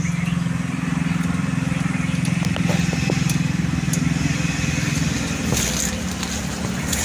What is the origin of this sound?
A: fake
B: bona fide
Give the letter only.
B